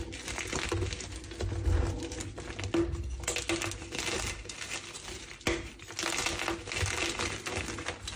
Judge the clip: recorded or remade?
recorded